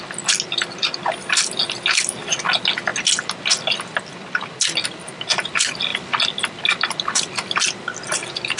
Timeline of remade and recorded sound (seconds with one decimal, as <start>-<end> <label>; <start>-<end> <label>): 0.0-8.6 recorded